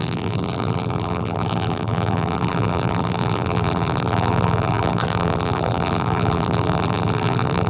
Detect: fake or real fake